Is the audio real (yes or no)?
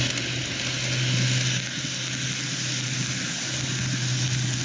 yes